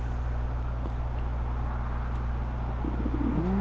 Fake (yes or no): no